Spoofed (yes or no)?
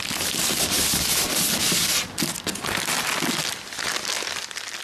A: no